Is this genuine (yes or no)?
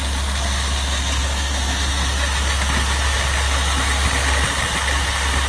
yes